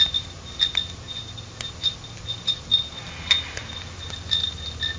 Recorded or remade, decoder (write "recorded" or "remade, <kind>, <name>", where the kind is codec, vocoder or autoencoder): recorded